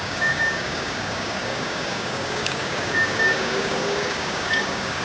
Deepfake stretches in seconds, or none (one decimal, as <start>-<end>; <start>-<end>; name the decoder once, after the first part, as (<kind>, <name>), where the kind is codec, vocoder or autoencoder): 0.0-5.0 (codec, DAC)

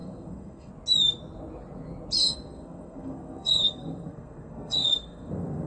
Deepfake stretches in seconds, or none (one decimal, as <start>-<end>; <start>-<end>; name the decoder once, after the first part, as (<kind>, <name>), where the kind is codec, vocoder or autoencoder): 0.0-0.7 (codec, SNAC); 2.2-5.7

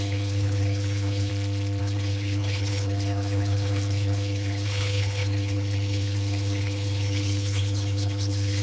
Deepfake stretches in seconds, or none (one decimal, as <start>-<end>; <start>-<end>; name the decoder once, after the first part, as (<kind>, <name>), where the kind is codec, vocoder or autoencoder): 0.0-1.3 (codec, HILCodec); 1.8-8.6

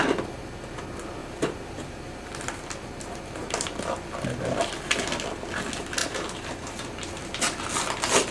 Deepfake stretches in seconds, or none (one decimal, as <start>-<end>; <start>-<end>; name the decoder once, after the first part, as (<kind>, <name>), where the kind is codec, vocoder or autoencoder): 1.2-2.3 (vocoder, BigVGAN v2); 6.0-6.7